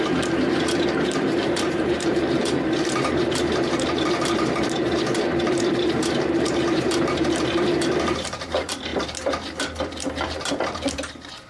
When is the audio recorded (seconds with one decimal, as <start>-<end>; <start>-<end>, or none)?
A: 8.9-10.0